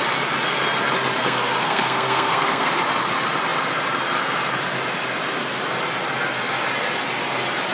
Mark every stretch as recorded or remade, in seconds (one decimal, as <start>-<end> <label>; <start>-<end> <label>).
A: 0.0-1.2 recorded; 1.2-2.7 remade; 2.7-7.7 recorded